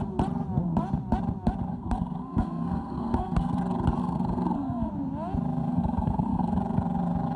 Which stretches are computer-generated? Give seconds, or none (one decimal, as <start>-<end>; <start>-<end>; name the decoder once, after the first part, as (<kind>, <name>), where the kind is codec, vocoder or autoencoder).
1.7-3.6 (codec, SNAC); 4.0-4.9; 5.7-6.6